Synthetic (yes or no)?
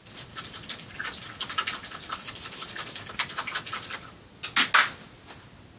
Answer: no